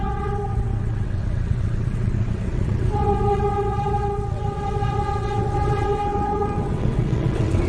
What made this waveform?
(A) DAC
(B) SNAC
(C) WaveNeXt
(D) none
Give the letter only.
C